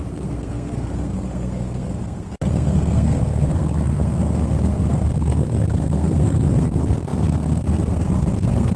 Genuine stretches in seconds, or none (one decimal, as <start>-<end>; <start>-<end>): none